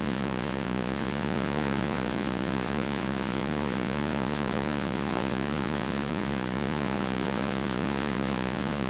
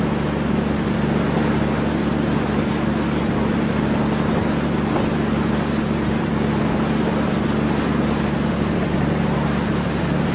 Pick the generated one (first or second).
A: first